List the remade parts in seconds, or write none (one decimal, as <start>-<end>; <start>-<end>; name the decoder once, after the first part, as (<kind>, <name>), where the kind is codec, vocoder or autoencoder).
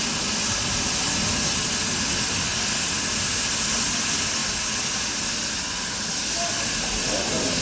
none